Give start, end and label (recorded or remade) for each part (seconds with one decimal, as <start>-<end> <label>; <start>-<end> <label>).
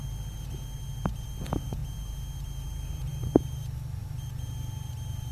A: 0.0-1.8 remade; 1.8-2.7 recorded; 2.7-5.3 remade